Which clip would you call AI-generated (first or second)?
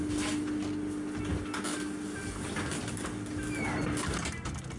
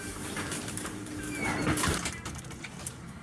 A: second